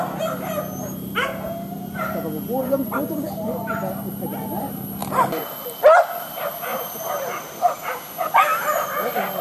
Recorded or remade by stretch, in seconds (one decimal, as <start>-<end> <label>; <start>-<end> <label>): 0.0-2.6 recorded; 2.6-3.7 remade; 3.7-9.4 recorded